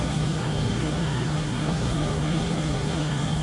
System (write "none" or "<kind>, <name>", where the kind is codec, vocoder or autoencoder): codec, SNAC